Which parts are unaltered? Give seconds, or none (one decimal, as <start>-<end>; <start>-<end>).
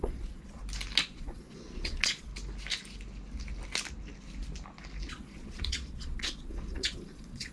0.6-1.1; 2.3-5.1